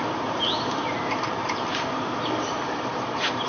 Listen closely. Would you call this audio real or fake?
fake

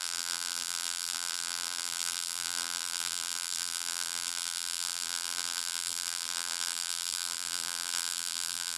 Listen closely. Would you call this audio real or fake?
fake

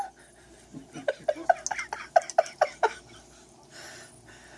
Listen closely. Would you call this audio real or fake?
real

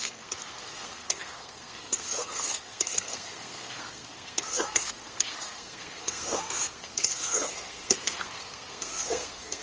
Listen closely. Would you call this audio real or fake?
fake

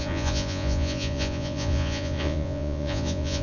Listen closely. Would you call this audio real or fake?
fake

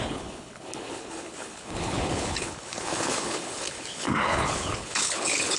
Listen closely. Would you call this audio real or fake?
fake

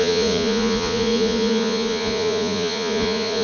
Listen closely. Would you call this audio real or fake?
fake